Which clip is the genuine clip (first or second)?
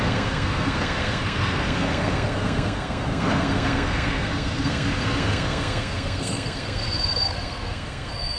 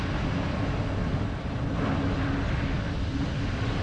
second